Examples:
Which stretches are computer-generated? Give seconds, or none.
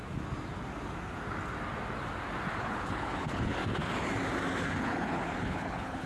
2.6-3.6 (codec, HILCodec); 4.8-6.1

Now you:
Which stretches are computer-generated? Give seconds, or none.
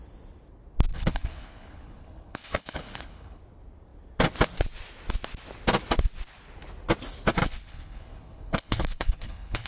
0.9-3.4 (codec, HILCodec); 7.4-9.7